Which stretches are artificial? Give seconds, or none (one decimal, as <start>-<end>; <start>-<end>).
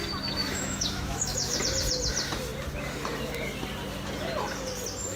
0.4-1.6